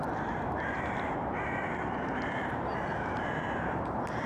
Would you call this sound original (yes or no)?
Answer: no